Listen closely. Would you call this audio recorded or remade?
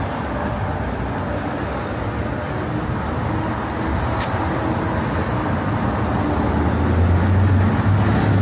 recorded